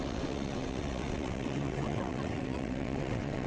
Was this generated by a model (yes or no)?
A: yes